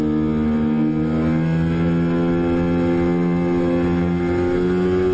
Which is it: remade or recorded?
recorded